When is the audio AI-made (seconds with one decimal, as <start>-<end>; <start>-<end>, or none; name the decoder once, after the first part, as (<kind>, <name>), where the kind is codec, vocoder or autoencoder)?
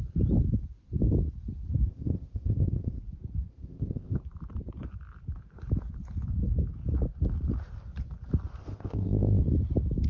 1.9-3.0 (codec, ZipCodec); 3.5-4.2; 8.6-9.4